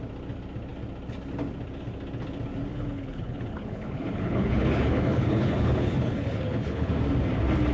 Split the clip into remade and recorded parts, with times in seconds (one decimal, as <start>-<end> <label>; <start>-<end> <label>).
0.0-2.7 recorded; 2.7-6.9 remade; 6.9-7.7 recorded